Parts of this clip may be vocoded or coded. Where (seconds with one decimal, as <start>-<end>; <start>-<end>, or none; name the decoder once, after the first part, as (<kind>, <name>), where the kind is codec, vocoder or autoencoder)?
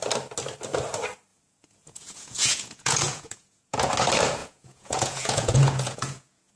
1.3-3.9 (vocoder, Vocos); 4.4-6.6